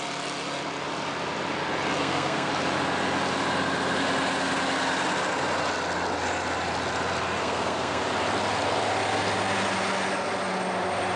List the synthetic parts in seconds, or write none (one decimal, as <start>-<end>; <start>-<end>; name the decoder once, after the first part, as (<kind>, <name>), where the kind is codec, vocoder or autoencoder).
2.0-2.5 (codec, SNAC); 7.4-8.0